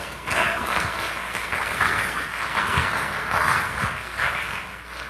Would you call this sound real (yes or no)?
no